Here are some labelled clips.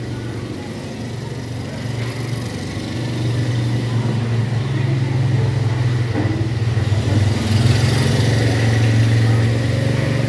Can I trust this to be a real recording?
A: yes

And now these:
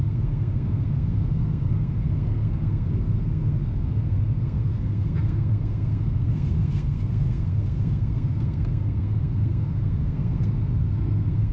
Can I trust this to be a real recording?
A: no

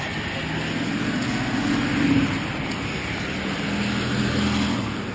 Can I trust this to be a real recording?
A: yes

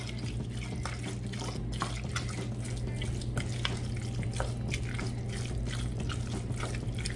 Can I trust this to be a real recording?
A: yes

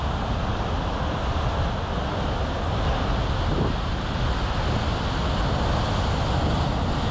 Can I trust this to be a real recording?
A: yes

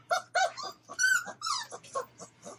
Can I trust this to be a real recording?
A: no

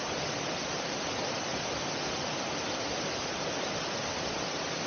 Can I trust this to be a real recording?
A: yes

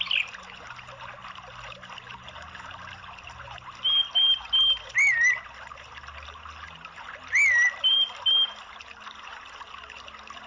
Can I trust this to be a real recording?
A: yes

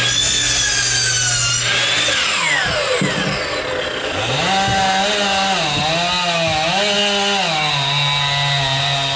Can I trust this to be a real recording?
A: yes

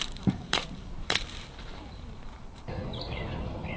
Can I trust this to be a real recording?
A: no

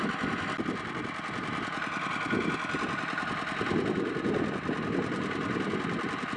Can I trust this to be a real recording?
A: yes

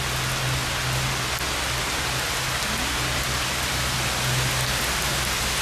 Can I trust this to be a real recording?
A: yes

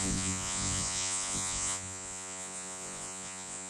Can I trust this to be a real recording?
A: no